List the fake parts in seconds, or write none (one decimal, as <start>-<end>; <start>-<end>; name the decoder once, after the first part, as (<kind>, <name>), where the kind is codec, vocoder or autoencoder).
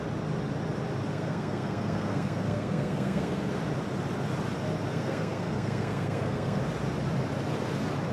1.1-3.5 (codec, SNAC); 4.9-6.6